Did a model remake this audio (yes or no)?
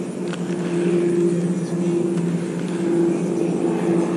no